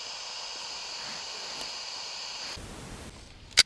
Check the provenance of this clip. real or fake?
real